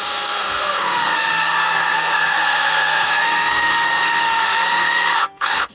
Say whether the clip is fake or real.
fake